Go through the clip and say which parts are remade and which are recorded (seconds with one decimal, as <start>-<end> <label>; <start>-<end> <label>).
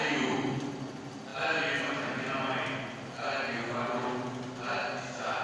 0.0-5.4 recorded